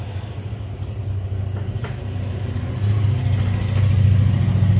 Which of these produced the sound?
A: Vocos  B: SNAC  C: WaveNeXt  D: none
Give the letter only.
D